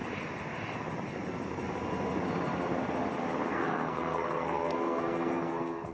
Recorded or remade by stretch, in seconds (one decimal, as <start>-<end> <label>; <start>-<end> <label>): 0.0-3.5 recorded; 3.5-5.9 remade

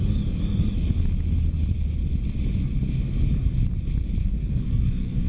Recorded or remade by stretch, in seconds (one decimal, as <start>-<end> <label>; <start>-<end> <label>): 0.0-4.2 recorded; 4.2-5.3 remade

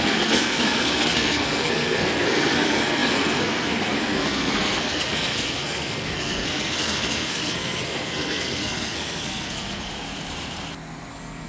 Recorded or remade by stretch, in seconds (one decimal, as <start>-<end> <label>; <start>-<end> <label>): 0.0-9.9 remade; 9.9-11.1 recorded; 11.1-11.5 remade

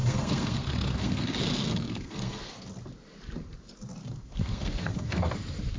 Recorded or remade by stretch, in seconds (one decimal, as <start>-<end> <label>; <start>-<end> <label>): 0.0-2.5 remade; 2.5-4.0 recorded; 4.0-5.3 remade; 5.3-5.8 recorded